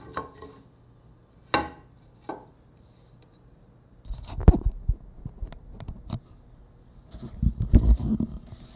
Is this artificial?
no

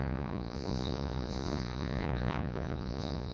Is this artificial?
yes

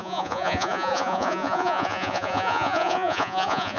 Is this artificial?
yes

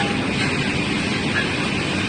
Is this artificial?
no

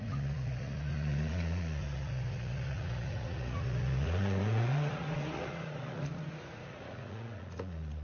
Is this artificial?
yes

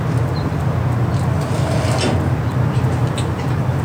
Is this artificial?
no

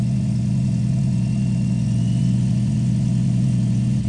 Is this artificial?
yes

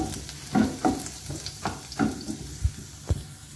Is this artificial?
no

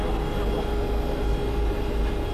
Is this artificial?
no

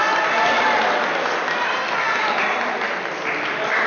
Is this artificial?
no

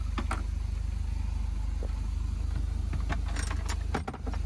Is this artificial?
no